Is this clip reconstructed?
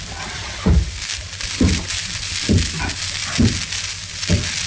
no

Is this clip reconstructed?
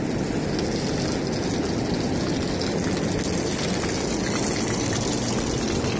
no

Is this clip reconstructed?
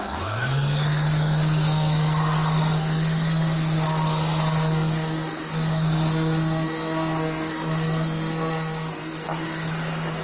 yes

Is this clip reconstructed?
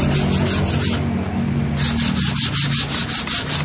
no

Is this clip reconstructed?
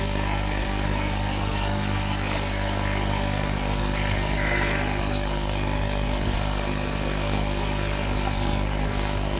yes